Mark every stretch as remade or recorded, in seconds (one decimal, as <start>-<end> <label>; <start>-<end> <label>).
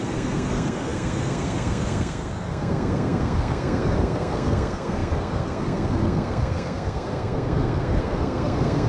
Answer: 0.0-8.9 remade